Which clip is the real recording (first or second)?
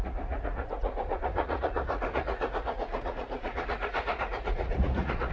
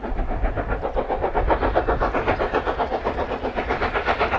second